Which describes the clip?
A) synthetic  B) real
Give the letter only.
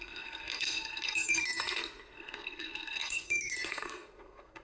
A